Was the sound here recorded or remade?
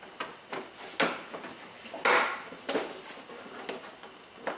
recorded